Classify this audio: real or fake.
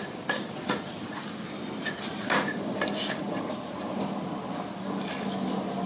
real